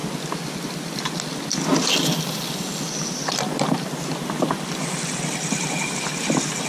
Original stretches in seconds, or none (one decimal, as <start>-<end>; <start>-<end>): 0.0-6.7